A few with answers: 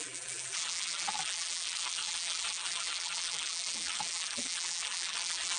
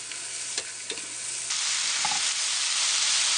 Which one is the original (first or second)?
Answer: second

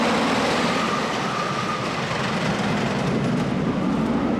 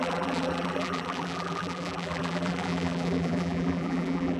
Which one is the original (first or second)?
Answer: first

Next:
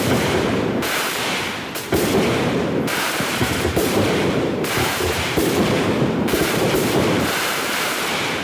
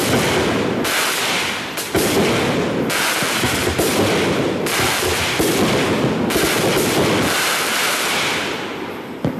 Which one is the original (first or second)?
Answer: second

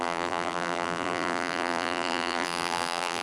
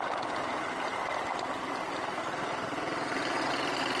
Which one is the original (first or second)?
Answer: second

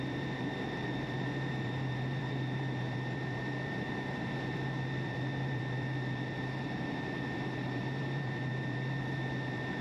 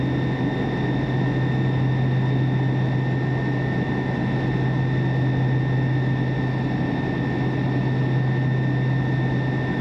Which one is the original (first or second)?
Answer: second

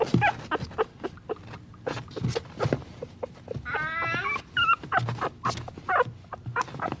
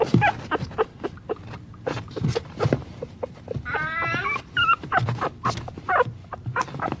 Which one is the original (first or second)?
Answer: first